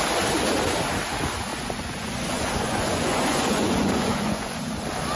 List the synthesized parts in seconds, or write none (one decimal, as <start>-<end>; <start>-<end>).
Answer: 1.5-4.6